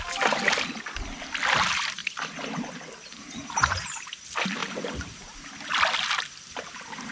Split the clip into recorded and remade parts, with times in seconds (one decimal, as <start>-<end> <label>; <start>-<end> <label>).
0.0-7.1 recorded